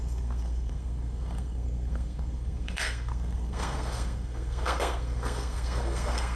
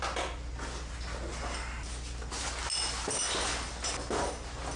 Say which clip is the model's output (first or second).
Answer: first